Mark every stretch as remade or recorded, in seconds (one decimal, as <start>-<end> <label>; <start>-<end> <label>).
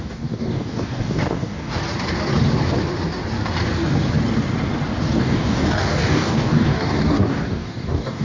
0.0-1.8 remade; 1.8-5.2 recorded; 5.2-8.2 remade